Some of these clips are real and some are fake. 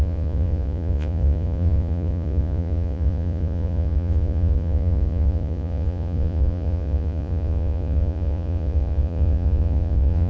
fake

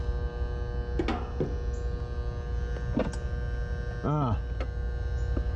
real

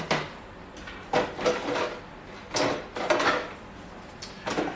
real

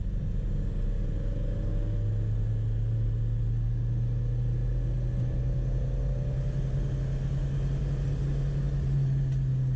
real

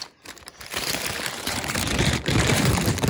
fake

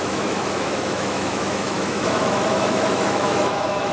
fake